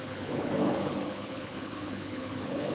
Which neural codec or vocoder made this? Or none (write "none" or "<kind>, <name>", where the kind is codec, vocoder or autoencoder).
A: codec, HILCodec